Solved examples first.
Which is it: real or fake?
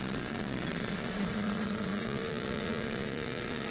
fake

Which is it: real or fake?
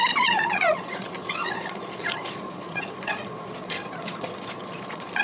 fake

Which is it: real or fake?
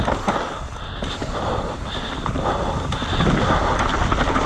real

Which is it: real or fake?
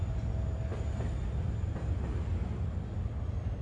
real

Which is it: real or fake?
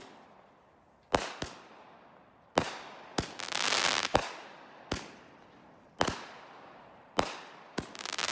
real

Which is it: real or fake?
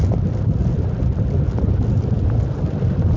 real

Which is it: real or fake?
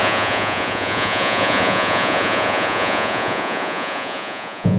fake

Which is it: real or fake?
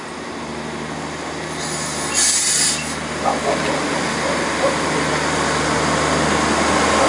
real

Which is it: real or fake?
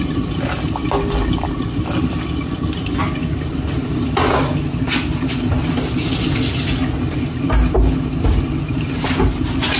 real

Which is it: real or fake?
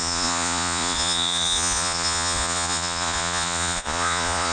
fake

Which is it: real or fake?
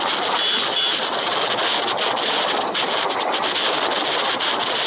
real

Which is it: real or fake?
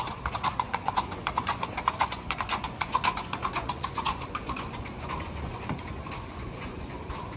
fake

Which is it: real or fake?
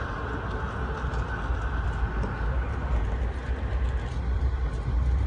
real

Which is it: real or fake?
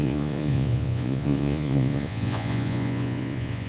fake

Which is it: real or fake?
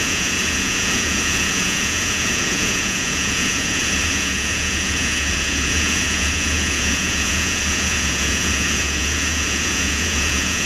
fake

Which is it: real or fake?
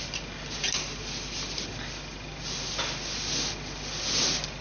real